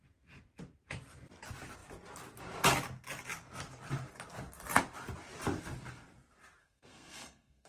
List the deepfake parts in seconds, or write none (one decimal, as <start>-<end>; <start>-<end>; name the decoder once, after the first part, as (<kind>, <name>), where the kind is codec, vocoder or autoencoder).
6.6-7.7 (codec, SNAC)